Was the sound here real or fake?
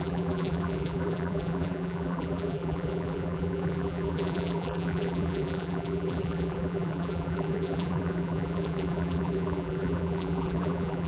fake